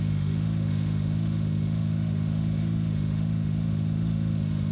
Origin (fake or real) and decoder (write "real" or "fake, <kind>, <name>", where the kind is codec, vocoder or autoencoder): fake, autoencoder, DAC-VAE